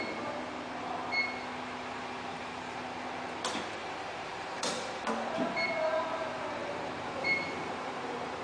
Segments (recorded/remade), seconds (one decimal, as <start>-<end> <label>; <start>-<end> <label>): 0.0-2.3 recorded; 2.3-2.8 remade; 2.8-3.8 recorded; 3.8-5.3 remade; 5.3-6.6 recorded; 6.6-8.4 remade